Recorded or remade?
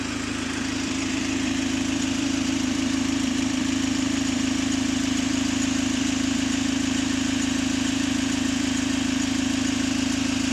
remade